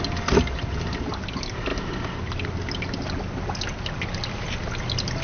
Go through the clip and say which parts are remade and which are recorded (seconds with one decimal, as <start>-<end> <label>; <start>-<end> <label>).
0.0-5.2 recorded